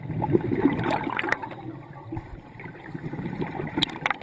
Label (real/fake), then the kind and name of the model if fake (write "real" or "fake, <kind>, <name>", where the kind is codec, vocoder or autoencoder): real